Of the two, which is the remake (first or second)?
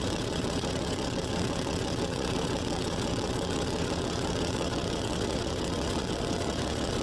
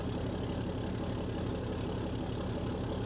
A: first